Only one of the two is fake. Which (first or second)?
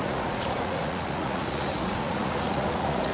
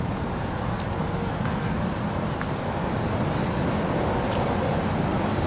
first